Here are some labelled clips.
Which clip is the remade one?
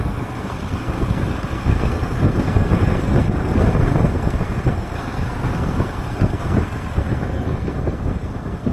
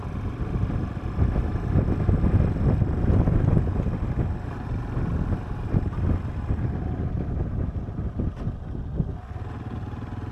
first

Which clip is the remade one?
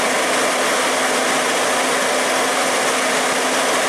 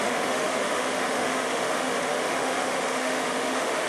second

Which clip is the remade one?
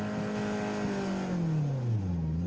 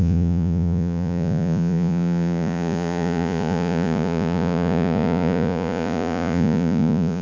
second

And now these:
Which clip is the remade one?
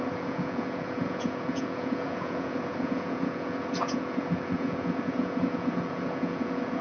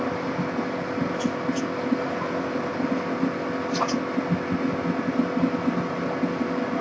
first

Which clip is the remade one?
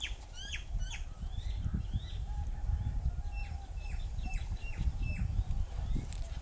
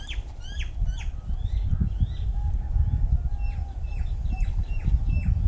first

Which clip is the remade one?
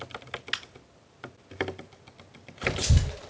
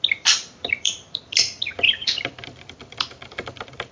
second